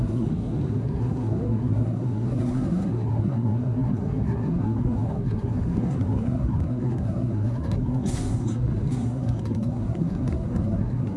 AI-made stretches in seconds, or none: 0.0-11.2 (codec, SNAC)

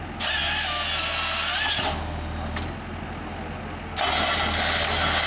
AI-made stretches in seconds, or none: none

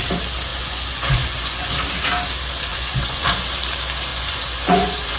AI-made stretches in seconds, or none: 0.5-1.7 (vocoder, Vocos); 2.7-3.4; 4.1-5.2

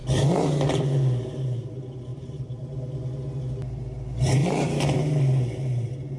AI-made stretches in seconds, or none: 2.1-2.7 (vocoder, BigVGAN v2); 4.4-6.2

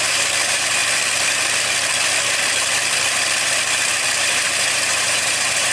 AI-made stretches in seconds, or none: 0.0-0.8 (vocoder, BigVGAN v2); 4.2-5.7